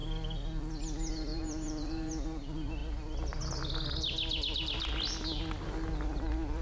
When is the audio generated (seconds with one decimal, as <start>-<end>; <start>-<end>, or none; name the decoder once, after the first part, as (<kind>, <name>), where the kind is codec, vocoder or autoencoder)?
1.3-2.1 (vocoder, BigVGAN v2)